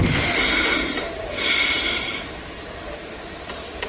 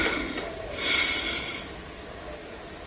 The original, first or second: second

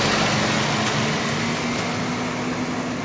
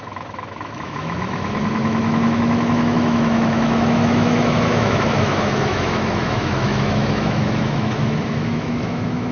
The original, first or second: first